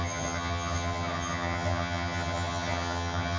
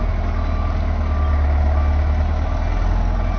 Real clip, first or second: second